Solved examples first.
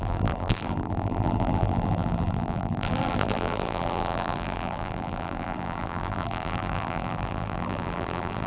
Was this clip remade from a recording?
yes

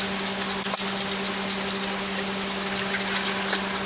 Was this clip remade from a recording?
no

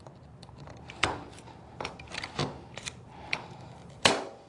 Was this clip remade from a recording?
yes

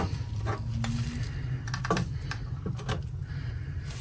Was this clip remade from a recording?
no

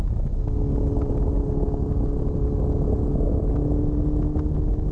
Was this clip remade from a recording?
no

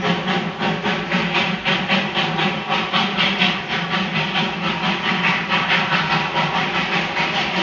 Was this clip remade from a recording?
no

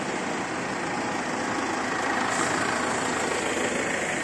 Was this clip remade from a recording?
no